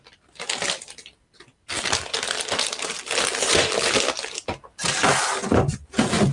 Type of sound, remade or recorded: recorded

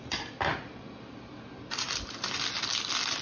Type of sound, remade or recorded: recorded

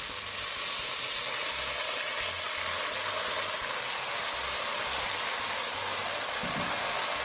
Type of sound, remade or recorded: recorded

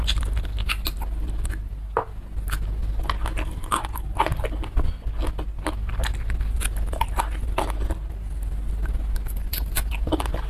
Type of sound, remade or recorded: recorded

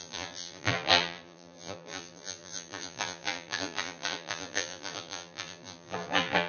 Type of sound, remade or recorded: remade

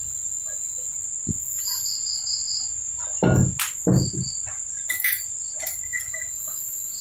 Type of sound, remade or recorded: recorded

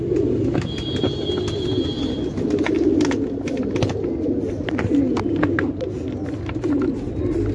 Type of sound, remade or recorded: recorded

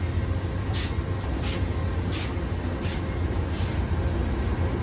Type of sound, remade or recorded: recorded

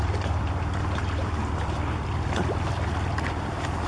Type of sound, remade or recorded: remade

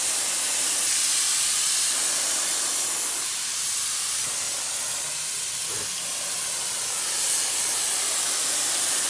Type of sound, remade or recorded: remade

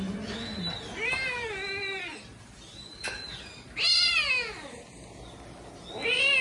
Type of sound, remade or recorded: recorded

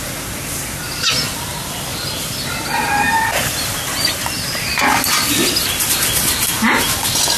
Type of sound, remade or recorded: recorded